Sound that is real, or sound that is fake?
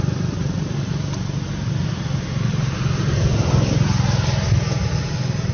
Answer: real